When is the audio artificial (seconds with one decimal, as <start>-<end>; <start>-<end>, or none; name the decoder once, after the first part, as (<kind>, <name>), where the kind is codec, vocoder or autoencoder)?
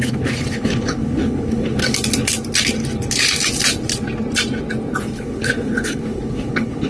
0.0-1.8 (codec, HILCodec); 5.0-6.9